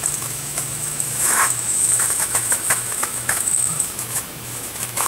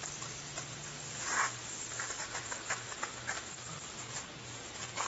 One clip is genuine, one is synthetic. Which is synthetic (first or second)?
first